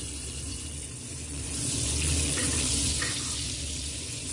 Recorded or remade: remade